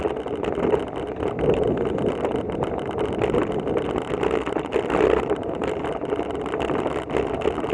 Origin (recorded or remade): recorded